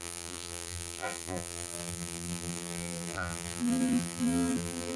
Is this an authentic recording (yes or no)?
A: no